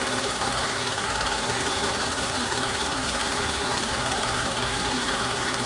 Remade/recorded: remade